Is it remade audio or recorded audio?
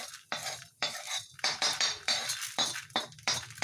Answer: remade